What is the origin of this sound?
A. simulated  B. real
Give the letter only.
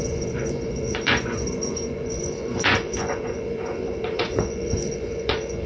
A